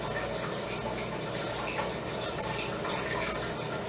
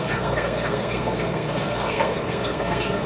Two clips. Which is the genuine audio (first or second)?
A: first